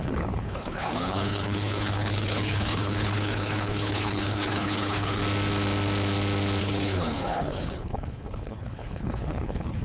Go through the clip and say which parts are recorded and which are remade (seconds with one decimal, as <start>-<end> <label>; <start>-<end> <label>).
0.0-5.2 remade; 5.2-6.6 recorded; 6.6-9.8 remade

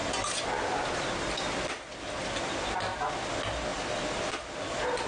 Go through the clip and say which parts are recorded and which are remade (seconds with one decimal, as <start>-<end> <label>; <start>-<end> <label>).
0.0-5.1 recorded